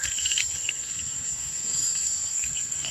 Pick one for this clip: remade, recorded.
remade